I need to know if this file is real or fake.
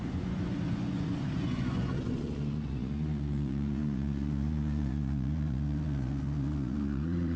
fake